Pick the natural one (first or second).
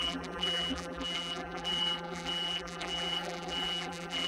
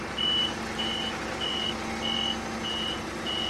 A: second